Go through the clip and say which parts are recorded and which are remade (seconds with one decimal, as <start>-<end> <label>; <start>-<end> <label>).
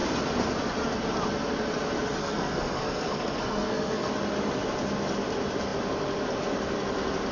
0.0-2.2 recorded; 2.2-4.1 remade; 4.1-7.3 recorded